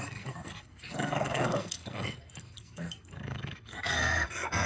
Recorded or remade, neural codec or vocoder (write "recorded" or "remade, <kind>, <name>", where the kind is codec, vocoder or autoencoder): remade, codec, SNAC